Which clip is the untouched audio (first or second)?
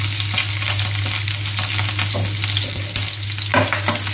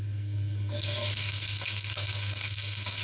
first